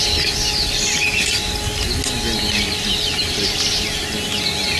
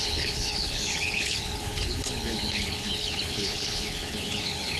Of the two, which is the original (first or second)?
first